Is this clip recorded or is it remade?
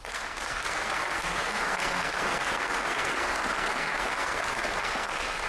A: remade